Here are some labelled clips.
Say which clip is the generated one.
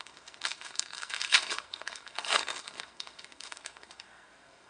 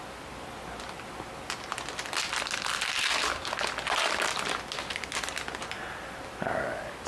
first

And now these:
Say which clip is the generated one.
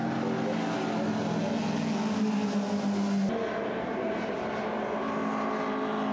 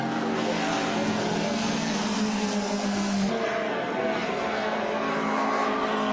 second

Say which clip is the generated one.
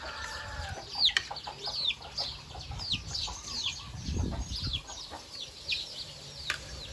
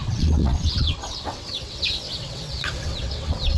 second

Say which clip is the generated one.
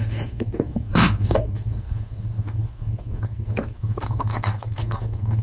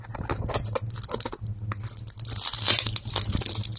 first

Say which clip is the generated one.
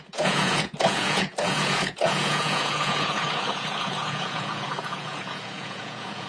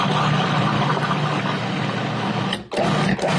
first